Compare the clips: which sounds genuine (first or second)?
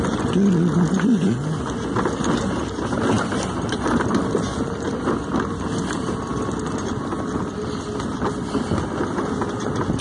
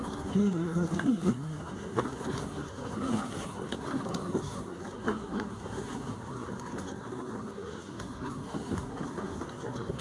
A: first